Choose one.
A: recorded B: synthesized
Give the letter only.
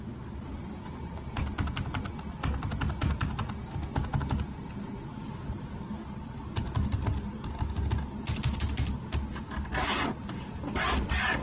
A